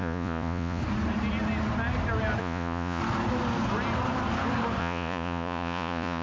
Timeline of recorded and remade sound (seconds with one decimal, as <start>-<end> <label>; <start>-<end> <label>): 0.0-0.8 remade; 0.8-2.4 recorded; 2.4-3.0 remade; 3.0-4.8 recorded; 4.8-6.2 remade